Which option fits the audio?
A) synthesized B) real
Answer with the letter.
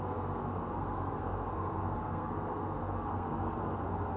A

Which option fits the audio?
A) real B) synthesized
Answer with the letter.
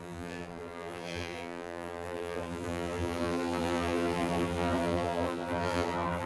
B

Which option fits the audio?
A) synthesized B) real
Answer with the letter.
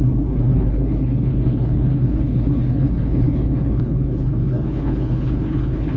A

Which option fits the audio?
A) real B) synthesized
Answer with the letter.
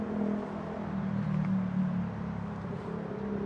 A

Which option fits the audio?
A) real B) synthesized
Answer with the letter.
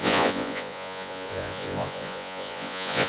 B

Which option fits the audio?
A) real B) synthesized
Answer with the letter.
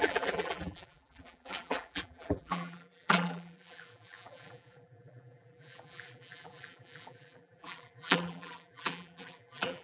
B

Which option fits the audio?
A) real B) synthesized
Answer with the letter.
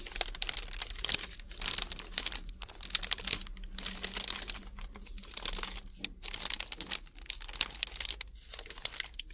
A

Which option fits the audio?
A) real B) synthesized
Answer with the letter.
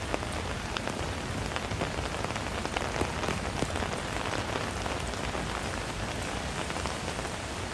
A